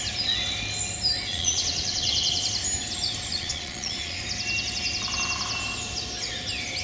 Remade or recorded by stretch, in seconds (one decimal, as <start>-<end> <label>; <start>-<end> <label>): 0.0-1.3 recorded; 1.3-2.4 remade; 2.4-3.3 recorded; 3.3-4.2 remade; 4.2-6.8 recorded